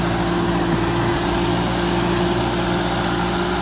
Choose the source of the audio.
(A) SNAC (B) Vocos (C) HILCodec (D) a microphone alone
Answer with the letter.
D